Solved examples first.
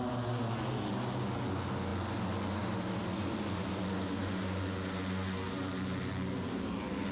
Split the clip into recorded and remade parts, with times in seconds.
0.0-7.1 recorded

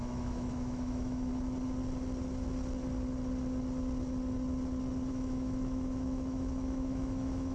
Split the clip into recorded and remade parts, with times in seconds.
0.0-1.3 remade; 1.3-5.1 recorded; 5.1-7.5 remade